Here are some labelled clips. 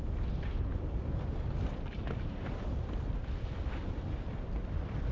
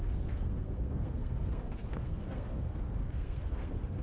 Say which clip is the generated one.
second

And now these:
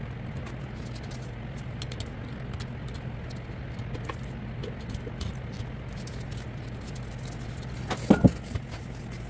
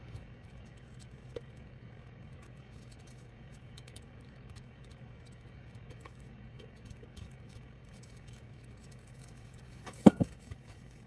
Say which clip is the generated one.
second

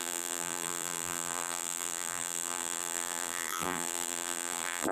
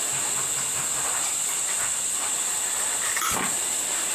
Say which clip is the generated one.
first